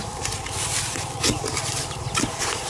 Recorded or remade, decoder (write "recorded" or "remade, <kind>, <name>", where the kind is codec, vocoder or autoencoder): remade, vocoder, BigVGAN v2